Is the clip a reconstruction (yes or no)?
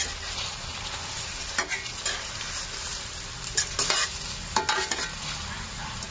no